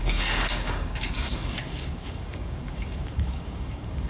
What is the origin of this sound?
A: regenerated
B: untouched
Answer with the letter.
A